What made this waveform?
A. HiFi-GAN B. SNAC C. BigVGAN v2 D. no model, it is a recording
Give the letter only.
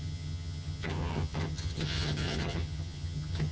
A